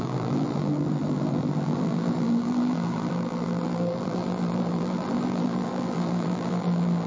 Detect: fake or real fake